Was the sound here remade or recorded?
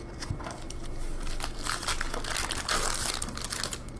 recorded